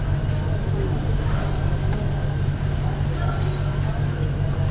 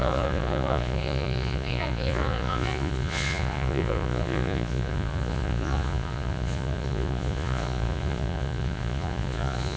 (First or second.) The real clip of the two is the first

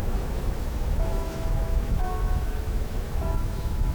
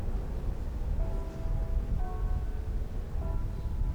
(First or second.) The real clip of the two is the second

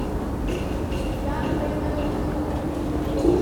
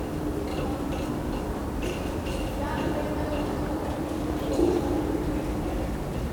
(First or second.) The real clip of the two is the first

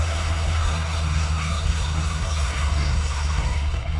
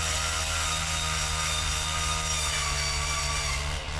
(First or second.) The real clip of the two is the second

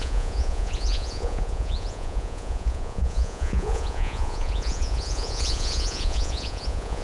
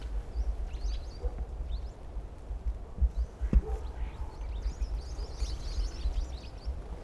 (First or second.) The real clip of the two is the second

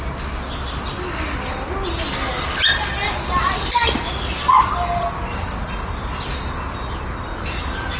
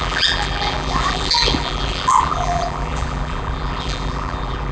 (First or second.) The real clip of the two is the first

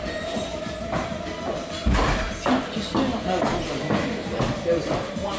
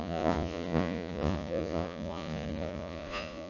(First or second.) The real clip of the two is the first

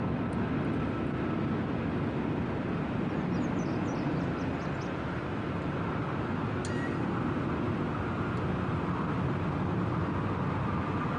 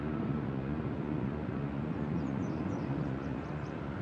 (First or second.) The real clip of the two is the first